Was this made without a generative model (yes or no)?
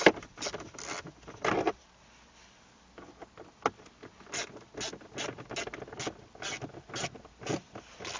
yes